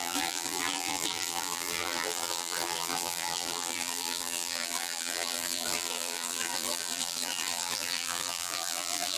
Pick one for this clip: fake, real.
fake